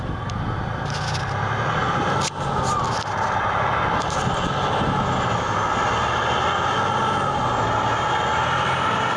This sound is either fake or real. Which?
real